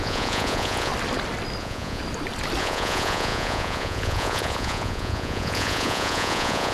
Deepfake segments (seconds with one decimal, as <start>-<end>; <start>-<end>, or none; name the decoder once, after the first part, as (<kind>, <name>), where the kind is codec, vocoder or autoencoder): 0.0-0.9 (vocoder, Vocos); 1.6-2.0; 2.6-6.7